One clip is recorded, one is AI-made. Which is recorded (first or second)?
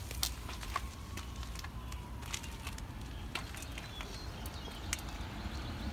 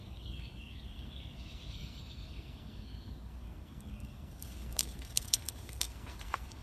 first